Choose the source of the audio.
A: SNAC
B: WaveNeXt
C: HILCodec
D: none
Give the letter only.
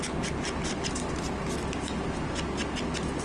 D